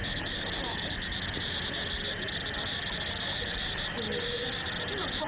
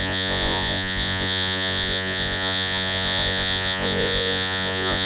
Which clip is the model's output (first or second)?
second